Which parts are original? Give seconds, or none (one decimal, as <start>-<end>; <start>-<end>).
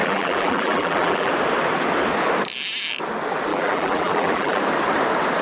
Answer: 1.3-3.5; 4.6-5.4